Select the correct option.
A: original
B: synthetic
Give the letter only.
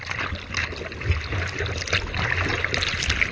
A